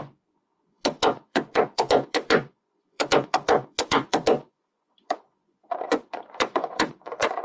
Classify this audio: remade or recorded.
remade